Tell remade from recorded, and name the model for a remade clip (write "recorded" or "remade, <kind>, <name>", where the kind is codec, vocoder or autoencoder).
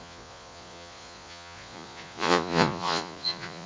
remade, vocoder, Vocos